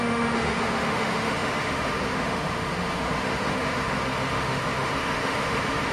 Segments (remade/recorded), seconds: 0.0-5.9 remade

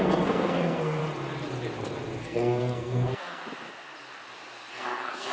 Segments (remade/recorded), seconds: 0.0-1.0 remade; 1.0-2.2 recorded; 2.2-3.4 remade; 3.4-4.7 recorded; 4.7-5.3 remade

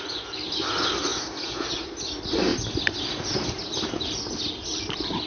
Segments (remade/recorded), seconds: 0.0-1.1 remade; 1.1-1.7 recorded; 1.7-5.3 remade

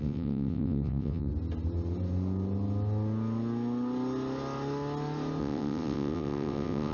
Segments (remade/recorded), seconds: 0.0-1.3 remade; 1.3-5.4 recorded; 5.4-6.9 remade